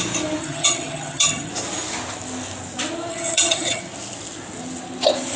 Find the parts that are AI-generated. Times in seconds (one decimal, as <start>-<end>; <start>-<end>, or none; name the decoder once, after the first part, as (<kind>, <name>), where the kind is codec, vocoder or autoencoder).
0.4-1.5 (vocoder, HiFi-GAN); 3.1-3.8